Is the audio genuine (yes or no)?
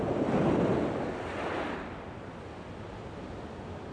yes